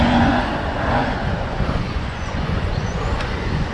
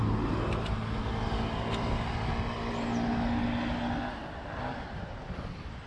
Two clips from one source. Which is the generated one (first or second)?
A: first